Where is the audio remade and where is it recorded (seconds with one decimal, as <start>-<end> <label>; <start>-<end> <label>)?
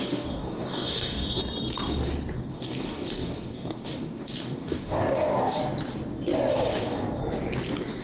0.0-1.4 remade; 1.4-2.5 recorded; 2.5-5.6 remade; 5.6-6.5 recorded; 6.5-7.2 remade; 7.2-8.0 recorded